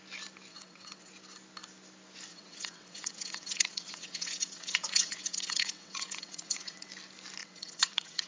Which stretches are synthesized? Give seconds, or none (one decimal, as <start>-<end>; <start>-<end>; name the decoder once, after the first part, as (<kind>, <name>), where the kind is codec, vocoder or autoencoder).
0.5-1.1 (vocoder, WaveNeXt); 2.3-6.9; 7.4-8.3